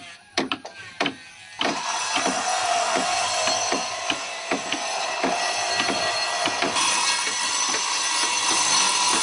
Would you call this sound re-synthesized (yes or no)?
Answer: yes